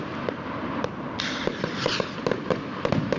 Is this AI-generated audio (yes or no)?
yes